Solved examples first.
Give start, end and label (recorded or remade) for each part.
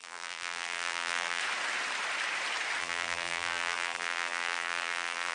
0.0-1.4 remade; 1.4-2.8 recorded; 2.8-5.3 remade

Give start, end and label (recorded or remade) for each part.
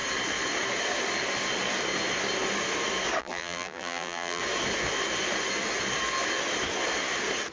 0.0-3.2 recorded; 3.2-4.4 remade; 4.4-7.5 recorded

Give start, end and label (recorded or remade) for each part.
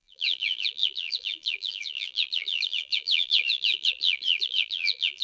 0.0-5.2 remade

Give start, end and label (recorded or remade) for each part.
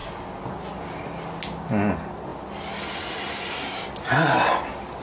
0.0-5.0 recorded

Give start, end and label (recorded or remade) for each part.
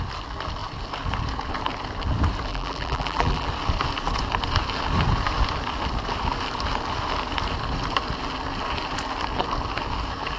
0.0-2.5 recorded; 2.5-3.5 remade; 3.5-10.4 recorded